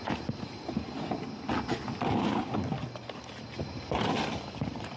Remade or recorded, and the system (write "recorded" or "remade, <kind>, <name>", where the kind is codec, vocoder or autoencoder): recorded